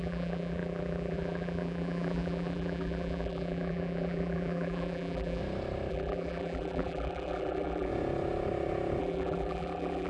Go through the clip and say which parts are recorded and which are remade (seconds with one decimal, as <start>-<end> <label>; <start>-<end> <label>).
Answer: 0.0-5.4 remade; 5.4-5.9 recorded; 5.9-7.9 remade; 7.9-9.0 recorded; 9.0-10.1 remade